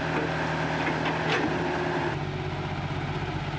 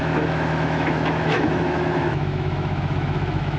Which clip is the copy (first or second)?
second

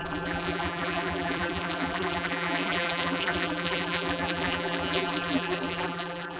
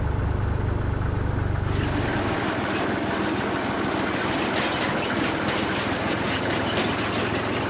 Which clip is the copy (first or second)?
first